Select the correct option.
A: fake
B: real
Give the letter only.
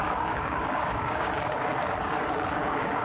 A